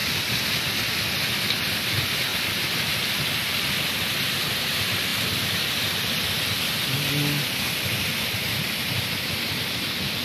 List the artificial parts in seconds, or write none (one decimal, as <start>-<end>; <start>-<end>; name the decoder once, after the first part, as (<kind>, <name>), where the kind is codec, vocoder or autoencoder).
none